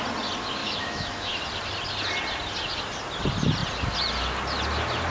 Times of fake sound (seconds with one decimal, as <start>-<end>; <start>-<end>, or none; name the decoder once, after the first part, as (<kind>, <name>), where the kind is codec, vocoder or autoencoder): 0.6-1.4 (autoencoder, DAC-VAE)